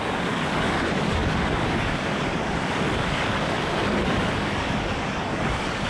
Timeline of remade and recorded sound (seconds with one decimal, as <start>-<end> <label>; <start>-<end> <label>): 0.0-5.9 remade